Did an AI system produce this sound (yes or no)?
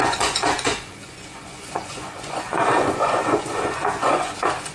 yes